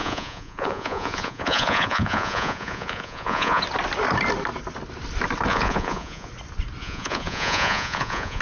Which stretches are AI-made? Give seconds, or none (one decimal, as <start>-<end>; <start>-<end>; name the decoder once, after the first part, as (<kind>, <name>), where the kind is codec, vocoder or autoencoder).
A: 0.0-3.6 (vocoder, Vocos); 5.5-6.3; 6.8-8.4